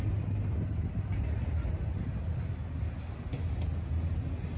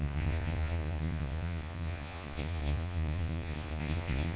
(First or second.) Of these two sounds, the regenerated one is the second